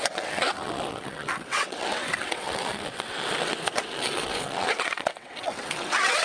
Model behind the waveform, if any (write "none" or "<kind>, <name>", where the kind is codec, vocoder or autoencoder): vocoder, WaveNeXt